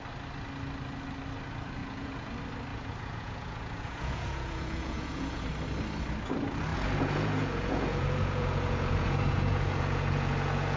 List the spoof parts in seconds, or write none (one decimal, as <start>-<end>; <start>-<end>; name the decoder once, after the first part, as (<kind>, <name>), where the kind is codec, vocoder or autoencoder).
1.8-2.3 (vocoder, Vocos); 2.7-5.5; 6.7-10.8